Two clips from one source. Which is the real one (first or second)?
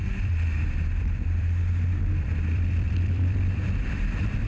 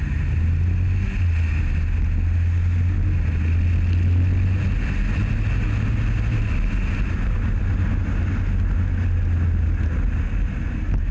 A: second